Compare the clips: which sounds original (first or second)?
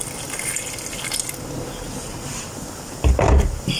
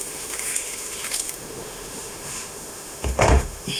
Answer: first